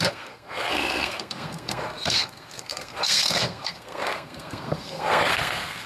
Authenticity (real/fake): fake